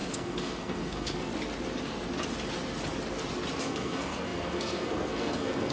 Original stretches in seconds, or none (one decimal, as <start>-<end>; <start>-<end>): 1.3-3.6